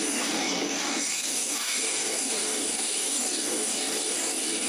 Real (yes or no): no